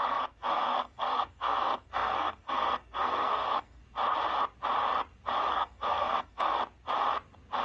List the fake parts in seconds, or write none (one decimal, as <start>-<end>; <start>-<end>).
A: 0.0-3.8; 5.5-6.5